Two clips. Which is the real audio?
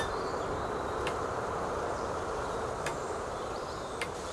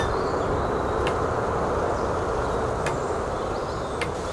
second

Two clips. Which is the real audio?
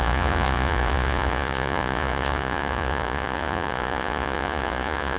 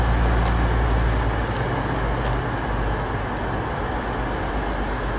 second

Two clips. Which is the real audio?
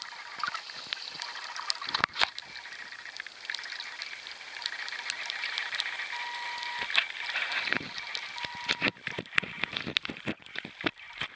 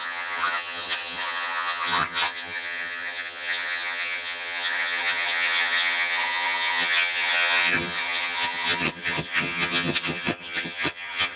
first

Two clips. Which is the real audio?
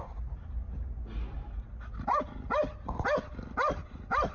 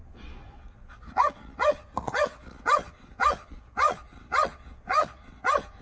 first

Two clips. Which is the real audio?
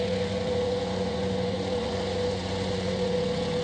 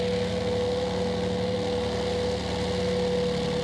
second